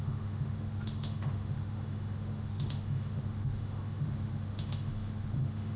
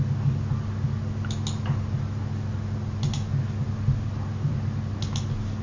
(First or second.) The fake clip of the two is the first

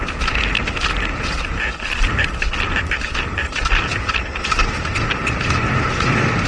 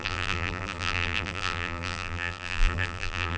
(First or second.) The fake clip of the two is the second